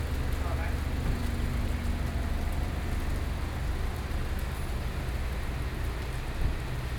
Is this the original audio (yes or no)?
yes